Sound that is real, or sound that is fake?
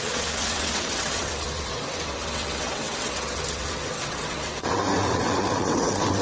fake